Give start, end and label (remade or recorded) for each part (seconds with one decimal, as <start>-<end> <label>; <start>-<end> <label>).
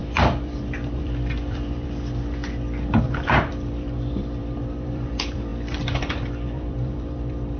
0.0-7.6 remade